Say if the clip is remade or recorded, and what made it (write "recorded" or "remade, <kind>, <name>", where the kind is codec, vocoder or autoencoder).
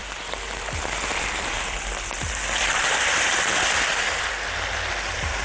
remade, vocoder, BigVGAN v2